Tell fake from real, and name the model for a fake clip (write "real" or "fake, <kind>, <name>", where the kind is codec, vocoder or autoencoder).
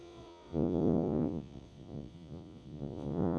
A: fake, vocoder, Vocos